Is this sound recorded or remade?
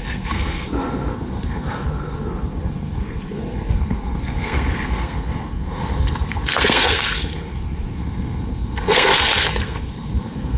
remade